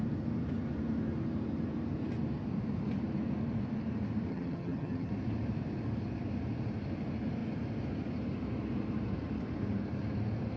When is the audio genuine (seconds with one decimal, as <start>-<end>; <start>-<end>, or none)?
0.0-4.3; 5.1-10.6